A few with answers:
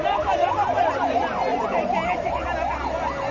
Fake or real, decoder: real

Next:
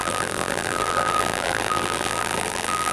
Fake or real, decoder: fake, vocoder, BigVGAN v2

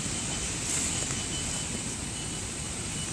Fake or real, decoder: real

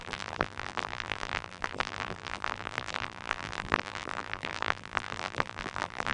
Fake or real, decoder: fake, vocoder, BigVGAN v2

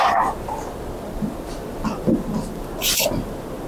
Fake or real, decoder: real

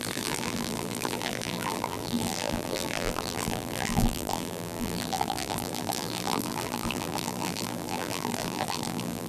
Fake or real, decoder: fake, vocoder, BigVGAN v2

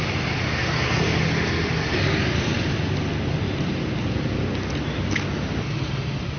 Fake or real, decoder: real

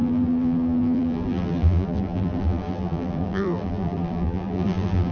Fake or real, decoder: fake, vocoder, BigVGAN v2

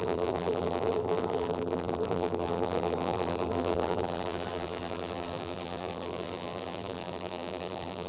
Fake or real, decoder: fake, vocoder, BigVGAN v2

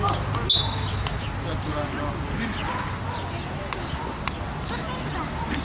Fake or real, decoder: real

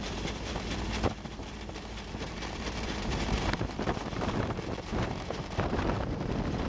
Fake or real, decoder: fake, vocoder, BigVGAN v2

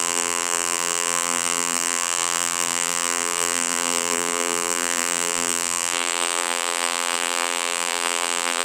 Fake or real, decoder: fake, vocoder, BigVGAN v2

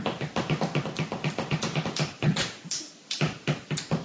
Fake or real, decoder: fake, vocoder, BigVGAN v2